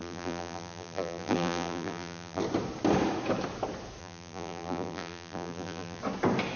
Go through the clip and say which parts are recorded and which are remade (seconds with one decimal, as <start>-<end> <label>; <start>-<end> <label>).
0.0-2.4 remade; 2.4-4.0 recorded; 4.0-6.0 remade; 6.0-6.6 recorded